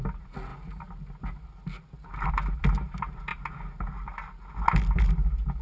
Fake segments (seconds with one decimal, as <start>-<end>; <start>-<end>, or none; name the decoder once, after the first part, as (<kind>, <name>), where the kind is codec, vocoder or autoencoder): none